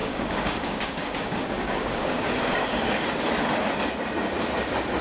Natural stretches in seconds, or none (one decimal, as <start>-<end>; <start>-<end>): 3.0-5.0